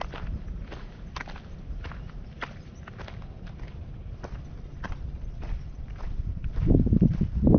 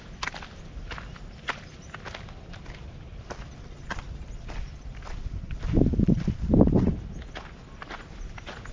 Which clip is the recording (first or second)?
second